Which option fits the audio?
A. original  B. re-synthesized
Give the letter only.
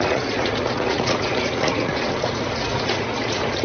B